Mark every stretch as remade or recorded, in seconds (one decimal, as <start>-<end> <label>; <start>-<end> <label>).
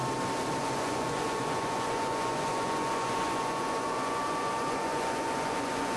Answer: 0.0-0.6 recorded; 0.6-6.0 remade